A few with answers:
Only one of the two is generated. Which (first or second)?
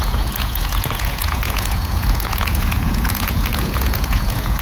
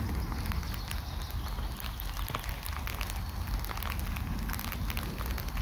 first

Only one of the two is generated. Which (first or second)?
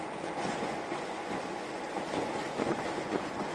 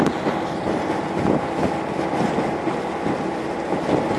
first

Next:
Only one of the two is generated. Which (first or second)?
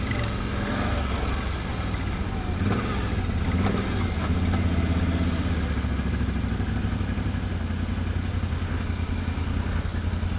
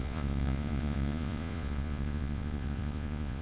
second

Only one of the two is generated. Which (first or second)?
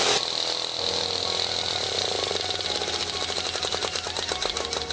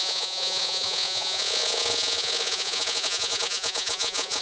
second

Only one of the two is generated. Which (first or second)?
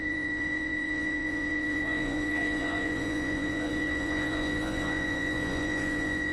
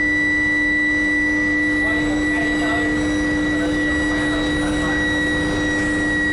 first